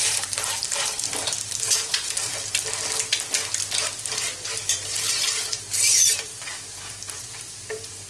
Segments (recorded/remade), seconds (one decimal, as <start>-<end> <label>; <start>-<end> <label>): 0.0-2.3 remade; 2.3-4.1 recorded; 4.1-8.1 remade